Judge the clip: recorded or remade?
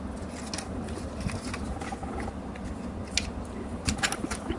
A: recorded